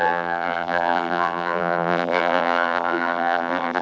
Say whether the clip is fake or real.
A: fake